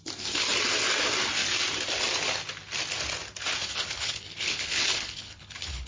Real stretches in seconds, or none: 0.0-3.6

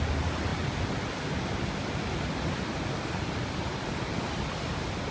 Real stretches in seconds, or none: 0.0-5.1